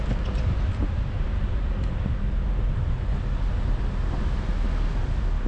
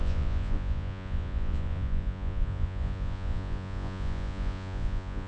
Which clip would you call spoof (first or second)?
second